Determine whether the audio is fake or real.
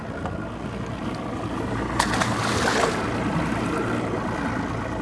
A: real